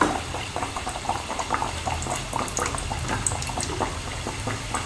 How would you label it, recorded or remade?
recorded